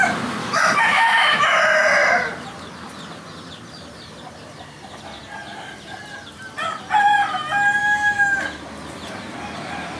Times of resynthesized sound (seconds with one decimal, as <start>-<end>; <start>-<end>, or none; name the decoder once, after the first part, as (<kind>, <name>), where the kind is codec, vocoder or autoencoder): 0.4-1.6 (autoencoder, DAC-VAE); 7.8-8.4

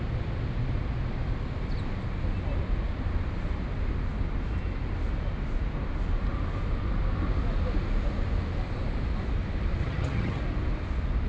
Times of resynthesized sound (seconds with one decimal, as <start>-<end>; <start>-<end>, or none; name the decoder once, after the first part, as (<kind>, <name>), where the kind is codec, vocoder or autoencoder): 9.8-10.4 (vocoder, HiFi-GAN)

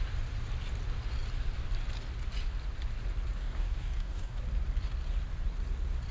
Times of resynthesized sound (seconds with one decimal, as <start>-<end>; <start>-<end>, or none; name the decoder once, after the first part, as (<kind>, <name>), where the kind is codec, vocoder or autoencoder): 3.4-4.4 (codec, DAC)